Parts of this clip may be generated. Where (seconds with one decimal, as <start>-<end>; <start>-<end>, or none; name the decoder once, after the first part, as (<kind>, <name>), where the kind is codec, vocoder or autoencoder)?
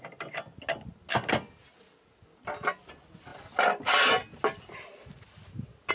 none